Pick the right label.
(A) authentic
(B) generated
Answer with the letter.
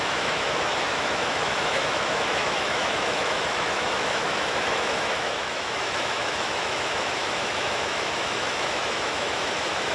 B